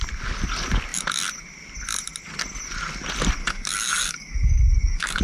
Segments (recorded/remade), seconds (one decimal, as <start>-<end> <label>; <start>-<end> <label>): 0.0-3.4 recorded; 3.4-5.2 remade